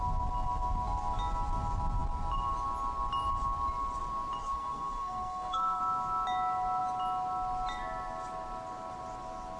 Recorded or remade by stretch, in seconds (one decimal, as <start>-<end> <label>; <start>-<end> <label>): 0.0-4.4 recorded; 4.4-5.8 remade; 5.8-9.6 recorded